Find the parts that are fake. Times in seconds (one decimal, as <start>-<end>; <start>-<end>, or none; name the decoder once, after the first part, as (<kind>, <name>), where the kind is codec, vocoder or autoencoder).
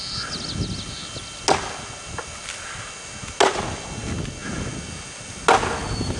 none